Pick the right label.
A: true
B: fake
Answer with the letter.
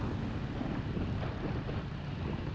A